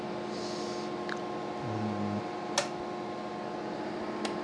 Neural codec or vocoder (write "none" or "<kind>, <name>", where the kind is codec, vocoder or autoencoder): none